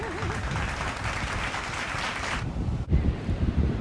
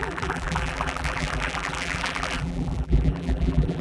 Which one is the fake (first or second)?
second